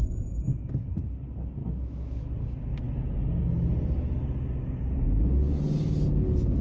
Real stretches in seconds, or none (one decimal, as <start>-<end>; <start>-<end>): 0.0-1.6; 2.3-6.6